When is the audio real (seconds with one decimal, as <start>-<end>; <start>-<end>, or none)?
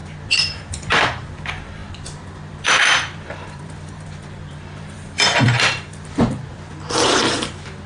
0.9-1.8; 6.5-7.9